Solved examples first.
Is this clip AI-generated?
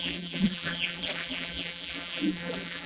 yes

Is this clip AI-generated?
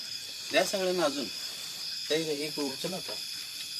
yes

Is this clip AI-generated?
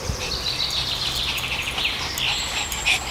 yes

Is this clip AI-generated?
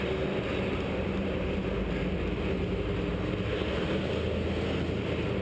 no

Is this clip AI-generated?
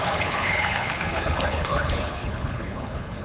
yes